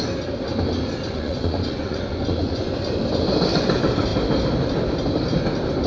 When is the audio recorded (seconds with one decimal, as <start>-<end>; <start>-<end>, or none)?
0.0-1.1; 2.7-5.9